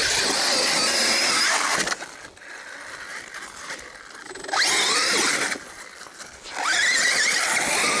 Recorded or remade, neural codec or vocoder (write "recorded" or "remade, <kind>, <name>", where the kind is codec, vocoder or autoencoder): recorded